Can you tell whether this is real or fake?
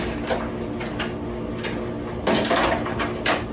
real